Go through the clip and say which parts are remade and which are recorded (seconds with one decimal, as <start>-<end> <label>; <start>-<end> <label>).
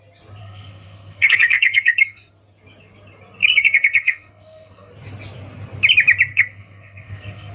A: 0.0-0.4 recorded; 0.4-2.3 remade; 2.3-3.4 recorded; 3.4-4.9 remade; 4.9-6.3 recorded; 6.3-7.5 remade